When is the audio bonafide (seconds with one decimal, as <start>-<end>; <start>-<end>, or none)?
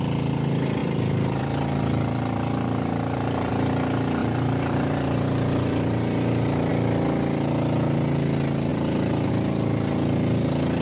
0.0-0.8; 3.5-4.2; 6.7-8.7; 9.3-10.8